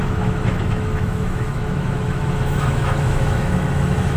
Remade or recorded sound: remade